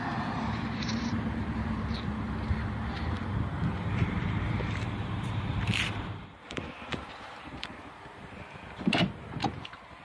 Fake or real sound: fake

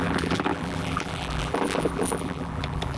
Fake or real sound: fake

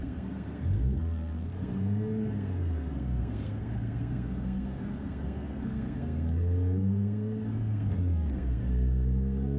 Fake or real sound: fake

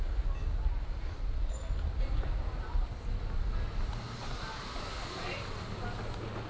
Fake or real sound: real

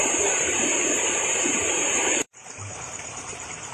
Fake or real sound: fake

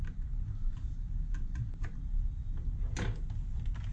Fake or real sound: real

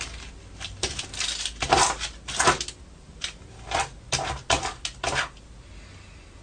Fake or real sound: real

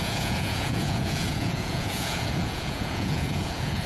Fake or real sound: fake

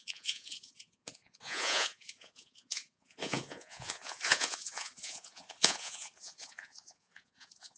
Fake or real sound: fake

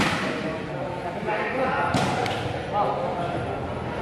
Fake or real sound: real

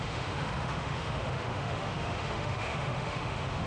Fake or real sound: fake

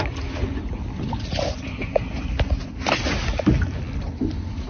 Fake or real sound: real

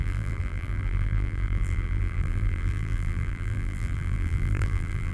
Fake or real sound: fake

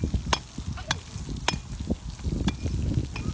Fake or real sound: real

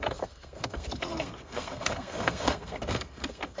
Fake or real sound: fake